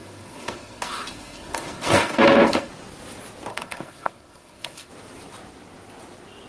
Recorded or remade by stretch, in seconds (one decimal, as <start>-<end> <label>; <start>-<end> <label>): 0.0-2.7 remade; 2.7-3.5 recorded; 3.5-4.9 remade; 4.9-6.5 recorded